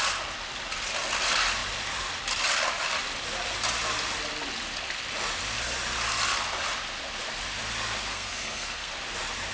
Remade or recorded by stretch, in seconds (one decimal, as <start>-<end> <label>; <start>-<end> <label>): 0.0-8.1 recorded; 8.1-8.9 remade; 8.9-9.5 recorded